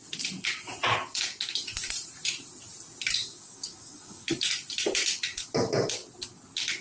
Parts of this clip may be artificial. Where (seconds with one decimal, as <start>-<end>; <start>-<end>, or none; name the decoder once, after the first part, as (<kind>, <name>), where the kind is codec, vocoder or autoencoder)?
3.2-4.5 (codec, DAC)